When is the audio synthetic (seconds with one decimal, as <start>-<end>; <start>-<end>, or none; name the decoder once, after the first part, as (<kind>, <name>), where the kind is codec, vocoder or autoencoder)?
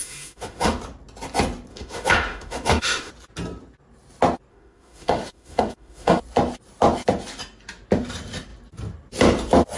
0.0-0.8 (autoencoder, DAC-VAE); 1.7-3.1; 4.5-6.2